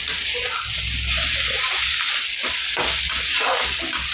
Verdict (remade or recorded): recorded